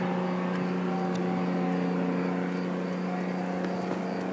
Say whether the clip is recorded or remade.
recorded